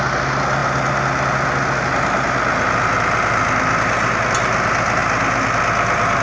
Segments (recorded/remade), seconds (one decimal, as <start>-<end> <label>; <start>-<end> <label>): 0.0-6.2 recorded